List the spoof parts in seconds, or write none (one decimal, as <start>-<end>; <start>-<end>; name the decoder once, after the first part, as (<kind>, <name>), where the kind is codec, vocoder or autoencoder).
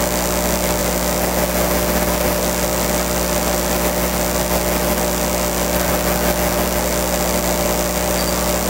none